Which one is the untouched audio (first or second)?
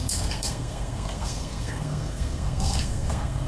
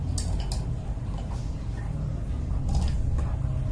second